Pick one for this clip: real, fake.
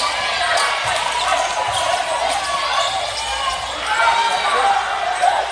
real